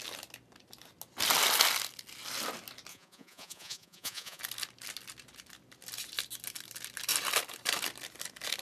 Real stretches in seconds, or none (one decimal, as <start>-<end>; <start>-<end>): 0.0-2.9; 4.4-8.6